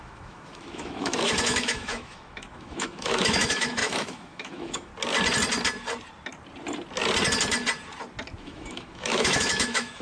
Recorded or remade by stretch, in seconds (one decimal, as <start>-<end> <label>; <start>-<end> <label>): 0.0-4.9 remade; 4.9-8.4 recorded; 8.4-10.0 remade